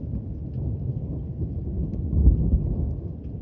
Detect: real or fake real